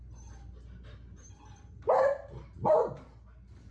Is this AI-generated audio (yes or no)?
no